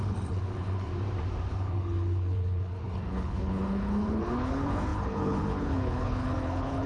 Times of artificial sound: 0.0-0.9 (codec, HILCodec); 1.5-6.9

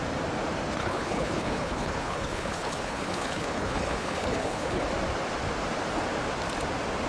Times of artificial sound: 0.8-4.9 (codec, HILCodec)